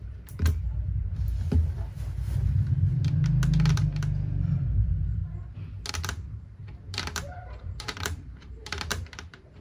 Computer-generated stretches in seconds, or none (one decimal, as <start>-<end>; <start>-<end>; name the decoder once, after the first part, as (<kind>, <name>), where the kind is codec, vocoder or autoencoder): 0.0-1.1 (vocoder, BigVGAN v2); 4.8-5.2; 5.9-9.6

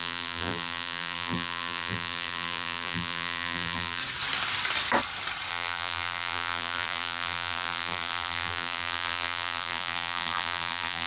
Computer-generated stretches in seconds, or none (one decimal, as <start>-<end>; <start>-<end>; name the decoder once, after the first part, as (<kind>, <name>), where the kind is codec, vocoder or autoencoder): 0.0-4.0 (vocoder, BigVGAN v2); 5.5-11.1